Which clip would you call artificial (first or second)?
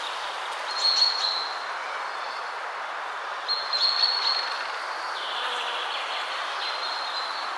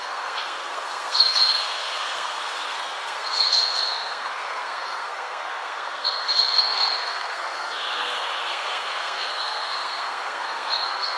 second